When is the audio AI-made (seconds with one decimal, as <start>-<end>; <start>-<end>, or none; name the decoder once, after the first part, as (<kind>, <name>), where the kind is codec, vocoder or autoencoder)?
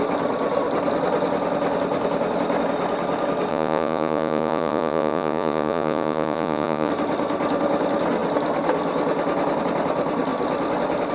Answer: 3.5-6.9 (vocoder, Vocos)